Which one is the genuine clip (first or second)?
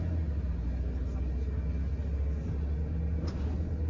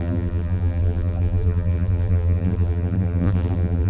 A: first